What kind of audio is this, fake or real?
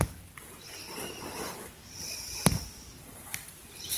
real